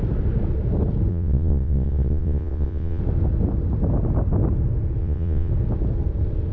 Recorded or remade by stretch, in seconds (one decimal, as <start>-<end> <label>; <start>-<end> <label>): 0.0-1.1 recorded; 1.1-3.0 remade; 3.0-5.0 recorded; 5.0-5.5 remade; 5.5-6.5 recorded